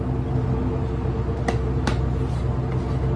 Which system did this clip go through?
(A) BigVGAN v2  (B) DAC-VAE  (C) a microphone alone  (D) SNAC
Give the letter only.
C